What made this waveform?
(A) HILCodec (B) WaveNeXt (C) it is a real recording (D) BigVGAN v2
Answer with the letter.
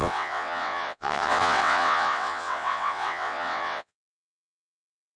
B